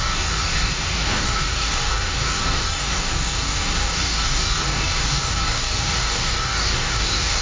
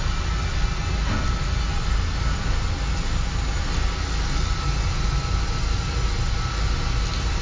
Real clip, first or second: second